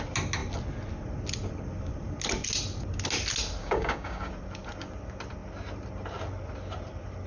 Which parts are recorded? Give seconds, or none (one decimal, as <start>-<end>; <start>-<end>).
0.0-3.6; 4.3-7.3